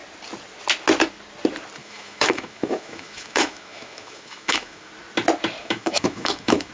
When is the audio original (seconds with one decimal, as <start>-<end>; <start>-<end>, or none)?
0.0-1.8; 4.9-5.6